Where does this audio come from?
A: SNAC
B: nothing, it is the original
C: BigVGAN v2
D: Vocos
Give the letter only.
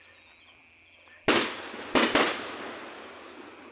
B